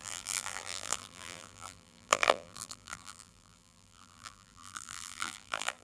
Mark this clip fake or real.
fake